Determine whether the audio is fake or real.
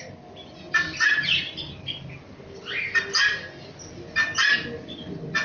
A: real